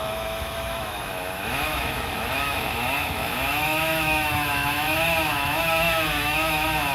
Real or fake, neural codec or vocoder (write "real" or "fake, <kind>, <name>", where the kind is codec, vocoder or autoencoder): fake, autoencoder, DAC-VAE